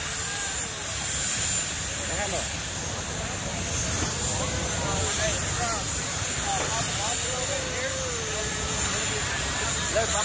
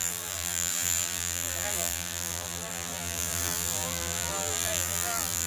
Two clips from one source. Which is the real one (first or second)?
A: first